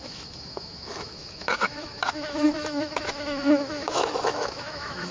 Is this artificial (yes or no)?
yes